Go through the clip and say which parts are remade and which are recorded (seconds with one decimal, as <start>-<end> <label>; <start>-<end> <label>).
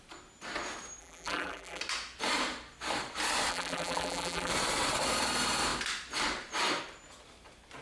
0.0-1.0 recorded; 1.0-1.8 remade; 1.8-3.5 recorded; 3.5-4.5 remade; 4.5-7.8 recorded